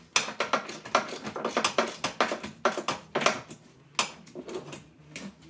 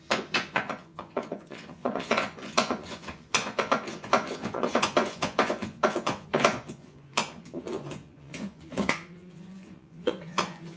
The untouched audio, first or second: first